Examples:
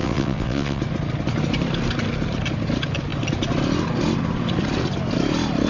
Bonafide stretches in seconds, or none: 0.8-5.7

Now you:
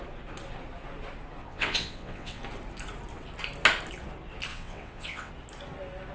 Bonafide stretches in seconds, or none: 0.0-1.4; 2.4-4.5; 5.3-6.1

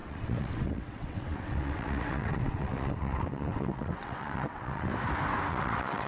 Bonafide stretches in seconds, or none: 4.9-5.5